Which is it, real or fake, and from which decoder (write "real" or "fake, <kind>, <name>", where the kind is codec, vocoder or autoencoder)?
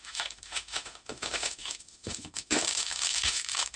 fake, autoencoder, DAC-VAE